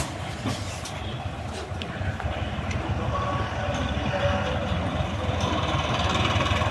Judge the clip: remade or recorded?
recorded